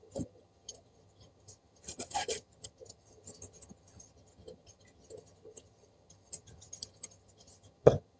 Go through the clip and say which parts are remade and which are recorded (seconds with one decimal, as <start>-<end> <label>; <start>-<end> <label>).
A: 0.0-8.2 remade